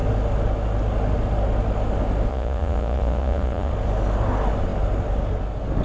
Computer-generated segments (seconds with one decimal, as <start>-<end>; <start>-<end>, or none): 2.3-3.7